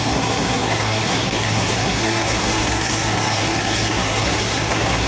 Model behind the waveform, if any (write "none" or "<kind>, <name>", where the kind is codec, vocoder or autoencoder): codec, SNAC